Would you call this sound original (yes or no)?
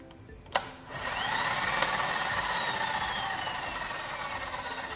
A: yes